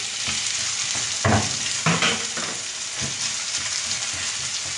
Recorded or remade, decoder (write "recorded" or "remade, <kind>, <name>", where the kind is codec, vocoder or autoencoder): recorded